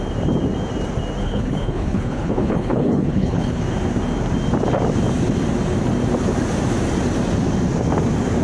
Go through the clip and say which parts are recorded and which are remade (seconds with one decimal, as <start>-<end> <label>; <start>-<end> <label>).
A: 0.0-1.2 recorded; 1.2-3.6 remade; 3.6-8.4 recorded